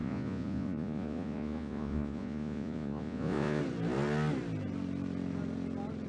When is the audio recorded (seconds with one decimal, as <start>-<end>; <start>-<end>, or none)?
3.6-6.1